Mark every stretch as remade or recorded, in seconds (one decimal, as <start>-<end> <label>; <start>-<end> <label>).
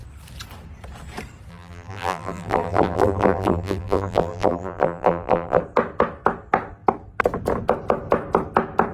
0.0-1.5 recorded; 1.5-5.6 remade; 5.6-8.9 recorded